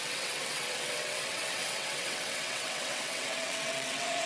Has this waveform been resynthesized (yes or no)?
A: yes